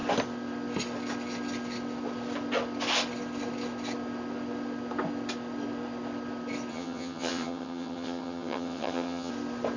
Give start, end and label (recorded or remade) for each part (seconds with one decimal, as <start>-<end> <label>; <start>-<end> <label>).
0.0-6.7 recorded; 6.7-9.3 remade; 9.3-9.8 recorded